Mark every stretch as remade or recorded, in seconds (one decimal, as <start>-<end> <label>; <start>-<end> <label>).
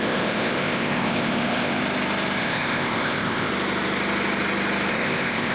0.0-1.8 remade; 1.8-2.4 recorded; 2.4-3.5 remade; 3.5-4.9 recorded; 4.9-5.5 remade